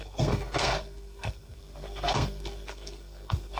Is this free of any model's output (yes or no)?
no